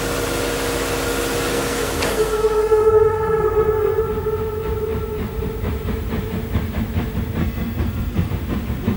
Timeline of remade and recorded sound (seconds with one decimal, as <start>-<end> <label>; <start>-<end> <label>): 0.0-1.5 recorded; 1.5-4.0 remade; 4.0-7.4 recorded; 7.4-8.3 remade; 8.3-9.0 recorded